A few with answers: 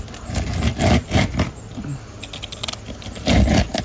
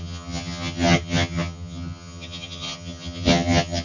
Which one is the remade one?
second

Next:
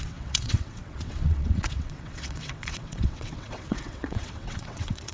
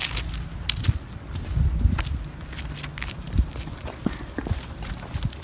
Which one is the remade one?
first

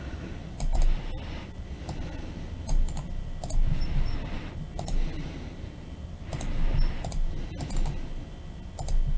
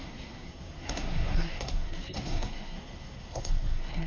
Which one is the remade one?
second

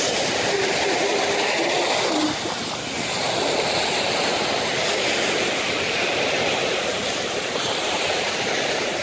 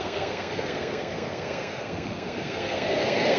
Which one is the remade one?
second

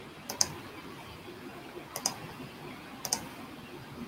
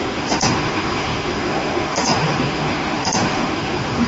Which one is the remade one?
second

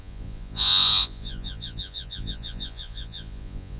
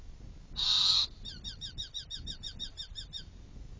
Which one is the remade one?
first